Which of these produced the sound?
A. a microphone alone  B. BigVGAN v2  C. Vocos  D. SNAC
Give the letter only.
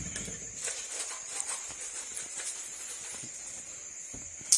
A